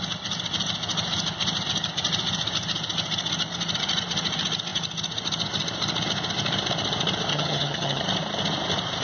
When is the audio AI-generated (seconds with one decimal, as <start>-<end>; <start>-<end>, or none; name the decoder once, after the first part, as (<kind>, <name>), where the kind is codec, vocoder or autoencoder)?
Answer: 7.3-8.0 (vocoder, HiFi-GAN)